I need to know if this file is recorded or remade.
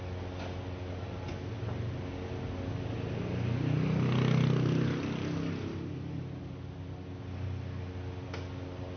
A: recorded